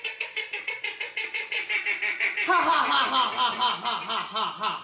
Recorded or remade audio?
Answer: recorded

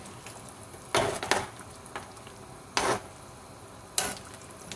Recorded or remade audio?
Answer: recorded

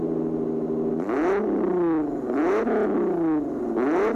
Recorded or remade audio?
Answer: recorded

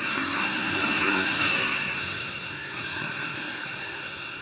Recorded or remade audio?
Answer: remade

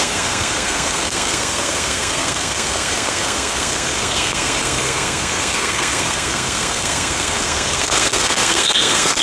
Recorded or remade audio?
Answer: remade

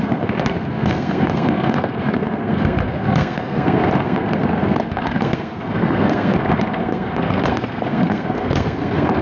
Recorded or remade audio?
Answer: remade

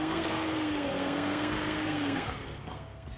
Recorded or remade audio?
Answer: remade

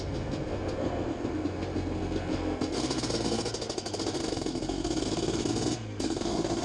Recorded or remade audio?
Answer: remade